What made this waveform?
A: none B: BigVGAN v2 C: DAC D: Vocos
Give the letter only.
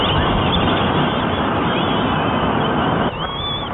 A